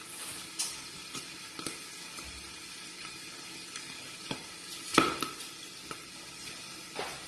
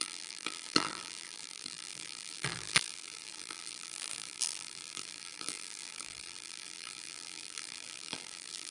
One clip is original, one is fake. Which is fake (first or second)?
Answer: second